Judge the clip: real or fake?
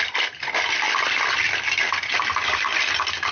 fake